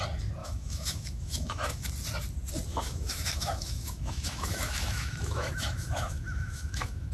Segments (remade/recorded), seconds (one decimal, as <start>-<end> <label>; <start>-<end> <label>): 0.0-0.4 recorded; 0.4-1.9 remade; 1.9-2.7 recorded; 2.7-7.1 remade